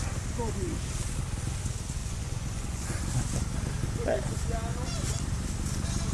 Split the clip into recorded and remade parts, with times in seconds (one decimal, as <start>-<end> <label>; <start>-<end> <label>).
0.0-2.0 recorded; 2.0-3.0 remade; 3.0-6.1 recorded